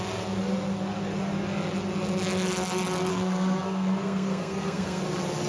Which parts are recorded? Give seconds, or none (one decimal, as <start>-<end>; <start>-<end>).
0.0-3.1; 5.0-5.5